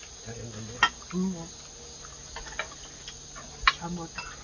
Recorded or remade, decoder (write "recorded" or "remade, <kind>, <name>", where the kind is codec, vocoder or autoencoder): recorded